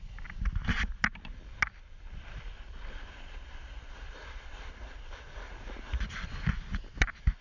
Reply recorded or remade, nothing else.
recorded